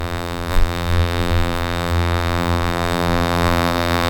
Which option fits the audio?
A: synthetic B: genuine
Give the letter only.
A